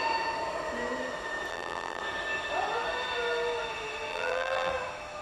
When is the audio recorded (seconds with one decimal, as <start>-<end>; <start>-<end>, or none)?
0.0-1.5; 2.0-4.1; 4.7-5.2